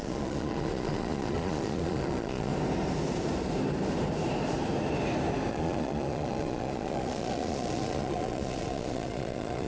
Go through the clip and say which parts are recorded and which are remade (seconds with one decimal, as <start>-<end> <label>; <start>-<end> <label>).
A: 0.0-2.5 remade; 2.5-5.5 recorded; 5.5-9.7 remade